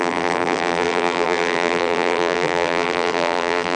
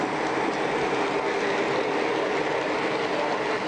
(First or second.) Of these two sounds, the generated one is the first